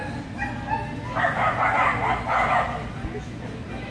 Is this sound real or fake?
real